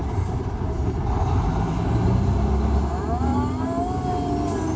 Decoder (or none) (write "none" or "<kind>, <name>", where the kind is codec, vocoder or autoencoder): none